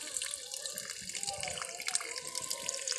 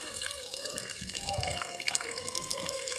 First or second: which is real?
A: first